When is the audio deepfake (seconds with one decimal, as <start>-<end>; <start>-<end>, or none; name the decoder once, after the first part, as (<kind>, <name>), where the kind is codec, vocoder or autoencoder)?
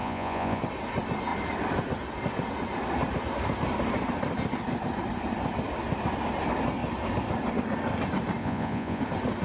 0.0-0.6 (vocoder, Vocos); 8.4-9.0